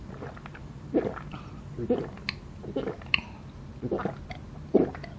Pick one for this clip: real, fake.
real